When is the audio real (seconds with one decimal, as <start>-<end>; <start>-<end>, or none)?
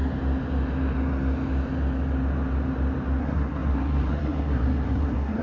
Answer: 0.0-3.2